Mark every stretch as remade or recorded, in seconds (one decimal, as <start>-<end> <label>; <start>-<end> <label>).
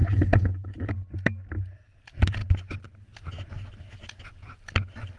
0.0-0.9 remade; 0.9-5.2 recorded